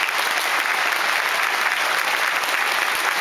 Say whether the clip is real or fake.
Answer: real